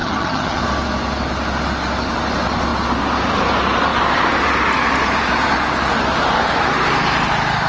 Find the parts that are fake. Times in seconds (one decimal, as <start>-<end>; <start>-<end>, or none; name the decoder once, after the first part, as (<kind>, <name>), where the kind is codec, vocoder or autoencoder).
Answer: 0.0-0.6 (vocoder, HiFi-GAN)